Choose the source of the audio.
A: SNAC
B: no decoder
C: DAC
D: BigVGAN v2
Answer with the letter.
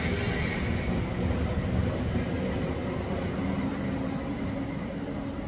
B